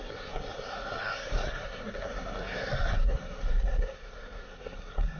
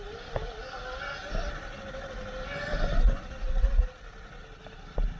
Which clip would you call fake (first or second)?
first